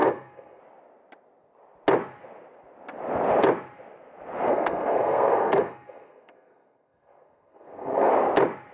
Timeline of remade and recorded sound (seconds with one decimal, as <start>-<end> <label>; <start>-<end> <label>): 0.0-0.6 remade; 0.6-4.5 recorded; 4.5-8.1 remade; 8.1-8.7 recorded